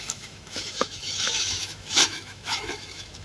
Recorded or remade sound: remade